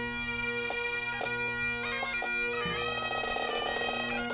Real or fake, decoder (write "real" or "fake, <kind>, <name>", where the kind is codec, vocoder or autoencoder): real